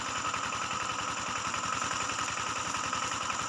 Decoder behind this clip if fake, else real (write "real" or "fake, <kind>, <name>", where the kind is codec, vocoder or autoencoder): real